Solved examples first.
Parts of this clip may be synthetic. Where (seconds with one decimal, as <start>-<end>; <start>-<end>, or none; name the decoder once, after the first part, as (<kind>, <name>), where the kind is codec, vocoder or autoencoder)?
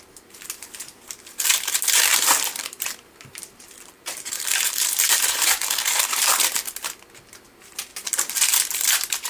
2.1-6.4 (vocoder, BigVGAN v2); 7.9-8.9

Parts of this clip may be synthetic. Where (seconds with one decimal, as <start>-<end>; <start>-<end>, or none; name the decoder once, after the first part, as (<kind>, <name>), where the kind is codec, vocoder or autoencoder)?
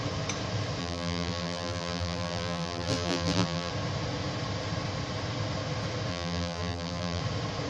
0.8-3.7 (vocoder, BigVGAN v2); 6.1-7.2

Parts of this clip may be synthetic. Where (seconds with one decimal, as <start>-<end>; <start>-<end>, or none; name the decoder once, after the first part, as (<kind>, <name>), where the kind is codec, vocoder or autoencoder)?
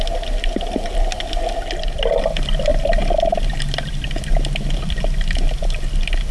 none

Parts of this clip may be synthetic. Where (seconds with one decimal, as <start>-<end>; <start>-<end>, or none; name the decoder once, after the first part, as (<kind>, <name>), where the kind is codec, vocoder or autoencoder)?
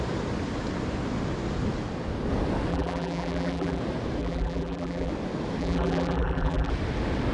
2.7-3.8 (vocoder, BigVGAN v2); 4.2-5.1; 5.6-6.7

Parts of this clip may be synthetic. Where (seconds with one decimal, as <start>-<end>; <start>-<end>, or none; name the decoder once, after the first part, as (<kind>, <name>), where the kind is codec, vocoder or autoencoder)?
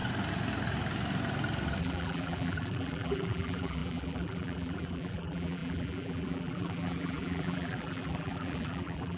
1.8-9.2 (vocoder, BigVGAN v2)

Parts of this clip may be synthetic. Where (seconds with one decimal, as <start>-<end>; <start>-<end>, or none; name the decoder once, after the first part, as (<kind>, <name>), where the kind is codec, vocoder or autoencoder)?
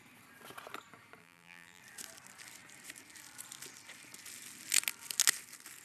1.2-1.8 (vocoder, BigVGAN v2)